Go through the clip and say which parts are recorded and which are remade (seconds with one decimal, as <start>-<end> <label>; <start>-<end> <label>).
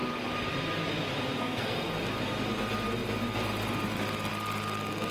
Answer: 0.0-1.4 recorded; 1.4-1.9 remade; 1.9-5.1 recorded